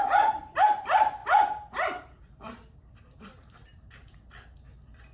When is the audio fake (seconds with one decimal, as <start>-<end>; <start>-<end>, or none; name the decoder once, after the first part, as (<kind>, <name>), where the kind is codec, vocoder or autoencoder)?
1.2-4.3 (vocoder, BigVGAN v2)